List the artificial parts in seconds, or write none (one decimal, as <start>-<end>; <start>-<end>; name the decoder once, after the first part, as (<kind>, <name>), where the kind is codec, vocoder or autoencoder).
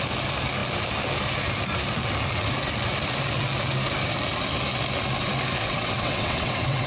5.6-6.9 (vocoder, WaveNeXt)